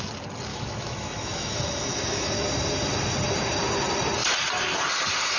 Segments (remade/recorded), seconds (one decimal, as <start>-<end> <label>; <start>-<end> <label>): 0.0-0.5 recorded; 0.5-2.3 remade; 2.3-5.4 recorded